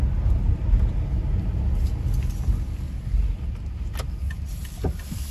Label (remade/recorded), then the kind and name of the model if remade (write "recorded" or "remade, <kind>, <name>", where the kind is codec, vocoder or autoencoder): recorded